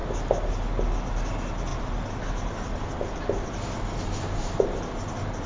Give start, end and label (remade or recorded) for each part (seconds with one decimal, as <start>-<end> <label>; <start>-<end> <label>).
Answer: 0.0-5.5 recorded